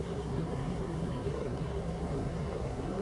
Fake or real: fake